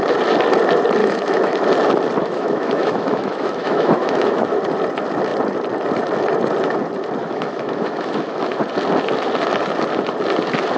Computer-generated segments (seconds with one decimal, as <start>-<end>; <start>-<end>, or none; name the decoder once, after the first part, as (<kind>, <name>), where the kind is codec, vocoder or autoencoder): 1.0-1.6 (autoencoder, DAC-VAE); 2.2-4.5; 7.2-8.6